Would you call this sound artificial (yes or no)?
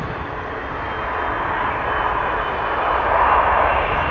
no